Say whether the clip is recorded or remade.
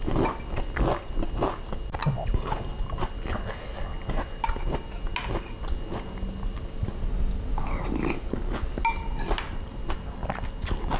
recorded